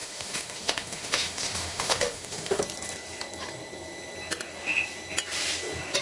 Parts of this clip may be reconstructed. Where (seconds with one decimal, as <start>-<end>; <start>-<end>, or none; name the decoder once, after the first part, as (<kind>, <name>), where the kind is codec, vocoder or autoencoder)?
0.0-2.6 (autoencoder, DAC-VAE)